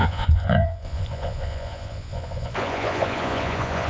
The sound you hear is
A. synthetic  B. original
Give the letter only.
A